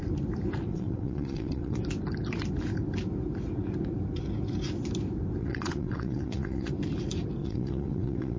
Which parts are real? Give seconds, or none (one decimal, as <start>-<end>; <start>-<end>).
0.0-0.7; 1.8-5.4; 6.7-7.4